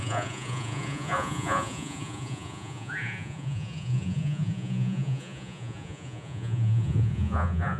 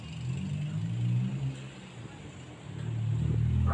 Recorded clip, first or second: second